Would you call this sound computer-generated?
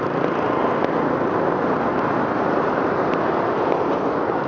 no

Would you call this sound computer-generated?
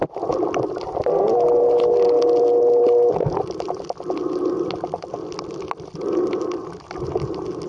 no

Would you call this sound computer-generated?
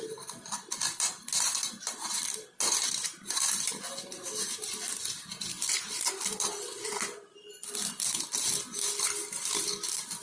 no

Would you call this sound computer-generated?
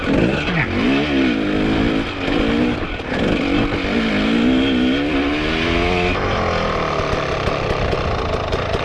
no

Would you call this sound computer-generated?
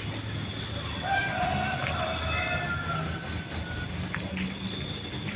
no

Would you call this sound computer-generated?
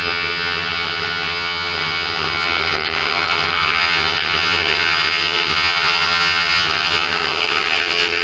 yes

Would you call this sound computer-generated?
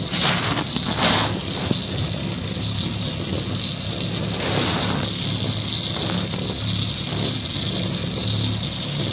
no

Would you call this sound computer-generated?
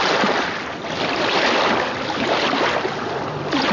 no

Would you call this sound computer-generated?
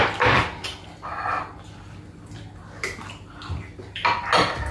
no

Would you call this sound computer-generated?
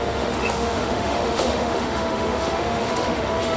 yes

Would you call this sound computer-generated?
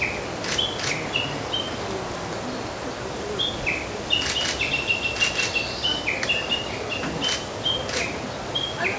no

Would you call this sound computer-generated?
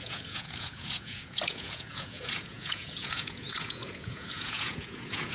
yes